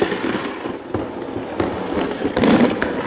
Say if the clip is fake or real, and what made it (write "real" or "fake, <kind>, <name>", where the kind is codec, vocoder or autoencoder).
real